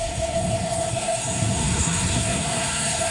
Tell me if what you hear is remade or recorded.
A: remade